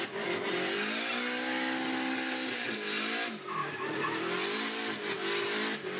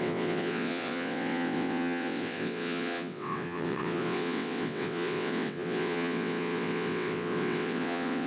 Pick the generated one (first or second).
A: second